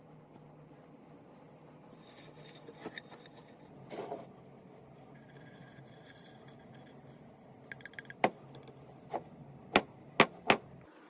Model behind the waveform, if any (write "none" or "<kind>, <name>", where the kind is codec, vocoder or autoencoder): none